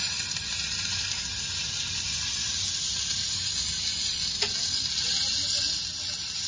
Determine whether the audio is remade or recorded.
recorded